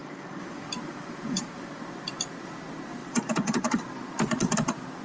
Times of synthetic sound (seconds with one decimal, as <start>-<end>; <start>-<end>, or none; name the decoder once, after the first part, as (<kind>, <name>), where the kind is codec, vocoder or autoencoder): 0.0-1.7 (vocoder, BigVGAN v2); 3.0-3.8